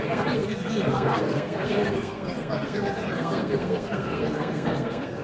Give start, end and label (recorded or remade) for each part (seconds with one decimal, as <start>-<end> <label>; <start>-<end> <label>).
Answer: 0.0-5.2 remade